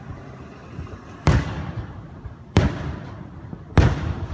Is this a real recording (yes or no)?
no